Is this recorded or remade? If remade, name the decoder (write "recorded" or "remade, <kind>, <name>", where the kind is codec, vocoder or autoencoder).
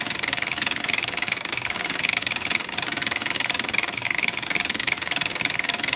remade, codec, DAC